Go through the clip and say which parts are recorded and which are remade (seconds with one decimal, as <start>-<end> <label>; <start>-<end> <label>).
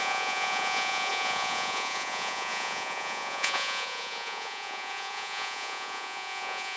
0.0-6.8 remade